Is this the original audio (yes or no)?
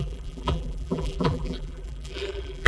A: no